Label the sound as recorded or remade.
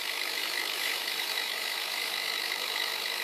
remade